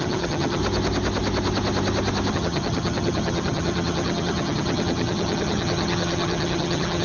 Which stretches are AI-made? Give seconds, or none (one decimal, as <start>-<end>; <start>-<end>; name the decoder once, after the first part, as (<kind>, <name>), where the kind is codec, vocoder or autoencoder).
0.0-0.6 (vocoder, HiFi-GAN); 2.3-7.0